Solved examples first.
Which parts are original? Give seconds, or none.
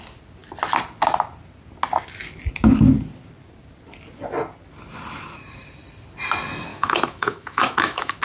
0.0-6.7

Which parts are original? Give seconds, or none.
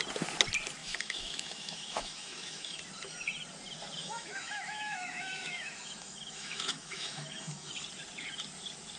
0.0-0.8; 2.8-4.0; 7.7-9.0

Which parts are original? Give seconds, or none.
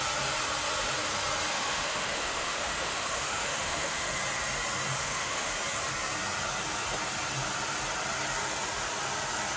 0.0-1.5; 4.2-5.0; 5.5-9.6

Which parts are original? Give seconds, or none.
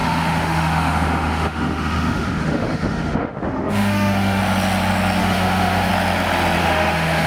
4.4-5.2; 5.9-6.6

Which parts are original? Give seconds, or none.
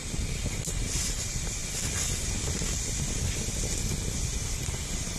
0.0-5.2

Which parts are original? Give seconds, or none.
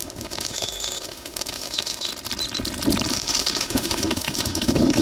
2.1-3.1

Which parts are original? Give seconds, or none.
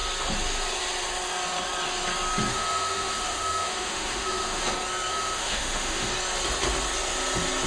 0.0-2.5; 4.6-5.1; 6.1-7.7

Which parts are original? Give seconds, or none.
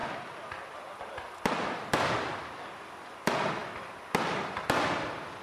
0.0-5.4